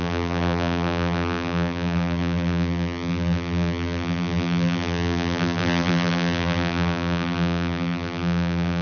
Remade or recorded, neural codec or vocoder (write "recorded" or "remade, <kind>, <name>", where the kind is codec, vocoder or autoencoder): remade, vocoder, BigVGAN v2